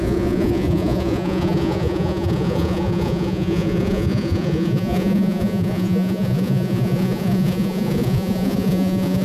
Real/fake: fake